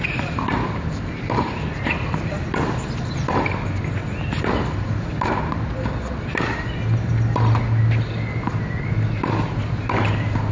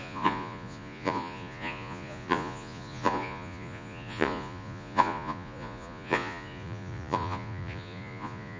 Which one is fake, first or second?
second